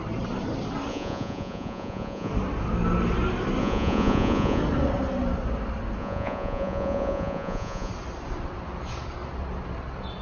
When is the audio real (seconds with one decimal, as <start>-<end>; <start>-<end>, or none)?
0.0-0.9; 2.3-3.6; 4.6-6.0; 7.9-10.2

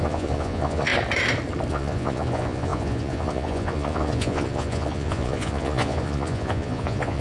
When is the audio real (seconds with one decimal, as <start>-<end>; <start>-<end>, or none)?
0.9-1.7

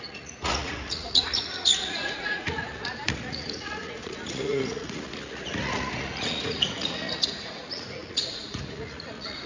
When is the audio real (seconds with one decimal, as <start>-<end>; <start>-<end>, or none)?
none